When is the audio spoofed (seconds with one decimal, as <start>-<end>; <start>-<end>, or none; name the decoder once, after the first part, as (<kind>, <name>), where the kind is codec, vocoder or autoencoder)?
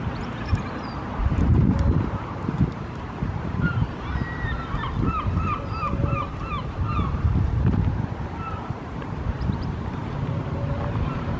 0.0-11.4 (vocoder, BigVGAN v2)